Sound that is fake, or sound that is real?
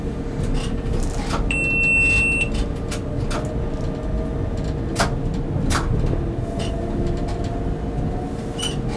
real